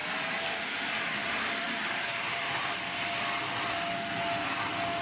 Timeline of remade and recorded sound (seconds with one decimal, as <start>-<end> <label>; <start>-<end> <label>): 0.0-1.2 recorded; 1.2-3.4 remade; 3.4-5.0 recorded